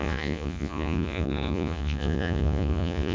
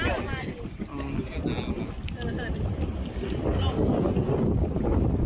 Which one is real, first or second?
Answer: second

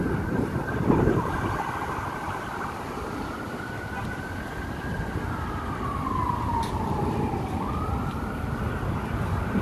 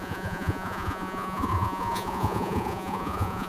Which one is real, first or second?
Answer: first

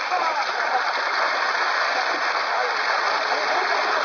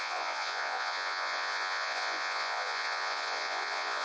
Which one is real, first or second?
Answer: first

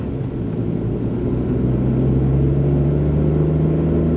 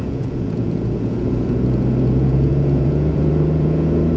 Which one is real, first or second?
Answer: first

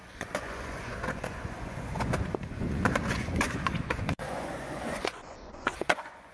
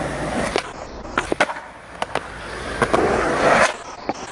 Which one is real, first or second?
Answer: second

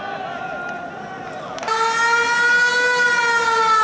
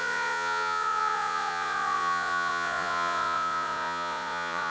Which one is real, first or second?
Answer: first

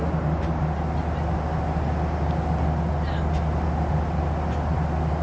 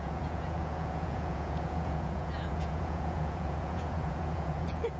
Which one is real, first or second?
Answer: first